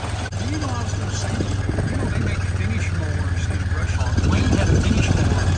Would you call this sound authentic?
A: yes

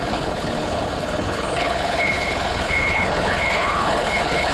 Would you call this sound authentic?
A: no